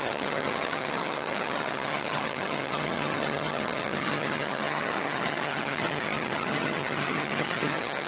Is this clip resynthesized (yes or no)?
yes